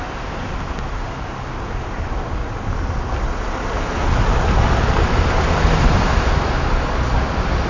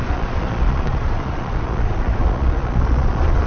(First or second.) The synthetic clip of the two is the second